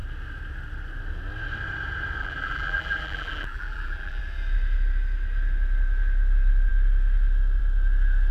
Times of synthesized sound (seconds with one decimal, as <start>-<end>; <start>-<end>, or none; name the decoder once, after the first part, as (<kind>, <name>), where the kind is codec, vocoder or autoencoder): 2.2-4.2 (vocoder, BigVGAN v2)